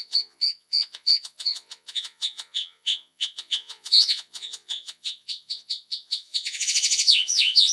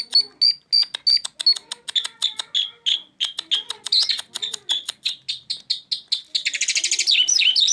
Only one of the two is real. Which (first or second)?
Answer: second